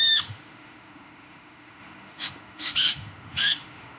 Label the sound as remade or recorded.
remade